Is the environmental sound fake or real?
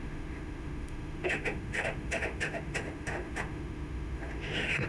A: fake